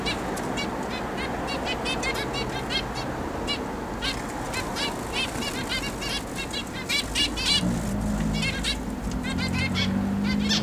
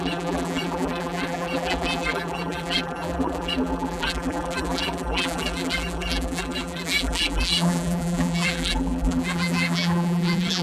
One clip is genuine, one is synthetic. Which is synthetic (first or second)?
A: second